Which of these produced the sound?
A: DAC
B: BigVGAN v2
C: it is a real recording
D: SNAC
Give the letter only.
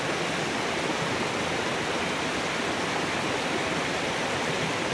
C